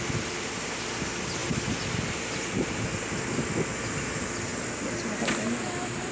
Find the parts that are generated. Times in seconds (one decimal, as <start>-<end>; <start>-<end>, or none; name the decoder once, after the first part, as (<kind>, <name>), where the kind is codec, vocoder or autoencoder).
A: none